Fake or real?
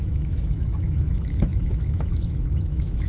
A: fake